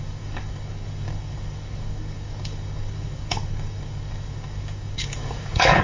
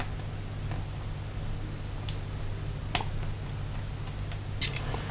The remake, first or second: first